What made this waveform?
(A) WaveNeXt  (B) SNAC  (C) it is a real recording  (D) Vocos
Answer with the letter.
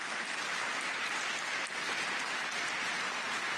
C